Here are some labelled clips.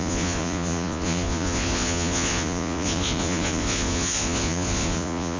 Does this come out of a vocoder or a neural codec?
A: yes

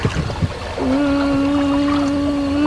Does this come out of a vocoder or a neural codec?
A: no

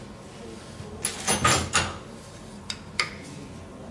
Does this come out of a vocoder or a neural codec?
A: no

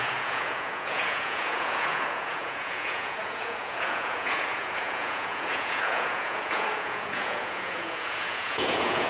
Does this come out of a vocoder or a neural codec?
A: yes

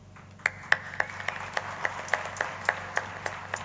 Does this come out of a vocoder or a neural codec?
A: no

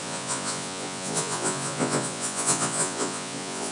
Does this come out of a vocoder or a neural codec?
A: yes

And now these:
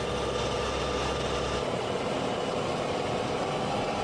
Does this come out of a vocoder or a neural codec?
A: no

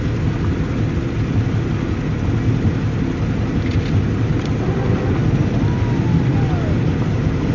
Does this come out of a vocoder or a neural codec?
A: no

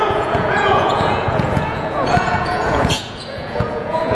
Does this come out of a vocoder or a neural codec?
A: yes